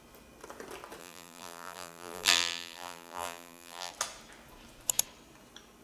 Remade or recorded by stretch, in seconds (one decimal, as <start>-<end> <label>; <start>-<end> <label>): 0.0-1.0 recorded; 1.0-3.9 remade; 3.9-5.8 recorded